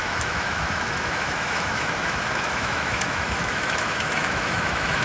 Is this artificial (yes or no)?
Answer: yes